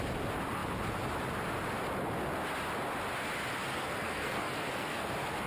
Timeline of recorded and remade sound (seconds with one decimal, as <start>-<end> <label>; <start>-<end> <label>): 0.0-3.7 recorded; 3.7-5.1 remade; 5.1-5.5 recorded